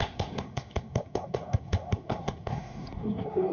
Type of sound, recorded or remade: remade